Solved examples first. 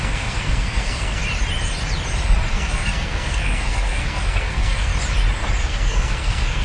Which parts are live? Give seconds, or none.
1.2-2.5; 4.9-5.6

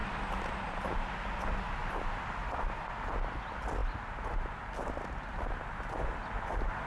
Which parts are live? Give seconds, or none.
0.0-6.9

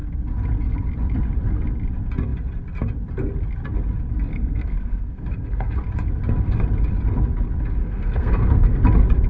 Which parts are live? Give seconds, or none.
0.0-4.3; 5.7-7.8; 8.8-9.3

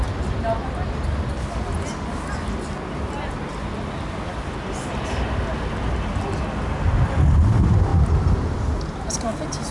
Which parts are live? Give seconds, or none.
0.0-9.7